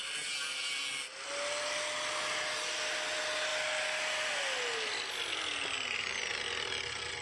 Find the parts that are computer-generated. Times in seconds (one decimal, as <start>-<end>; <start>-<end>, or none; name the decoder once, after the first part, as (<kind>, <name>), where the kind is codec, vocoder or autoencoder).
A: none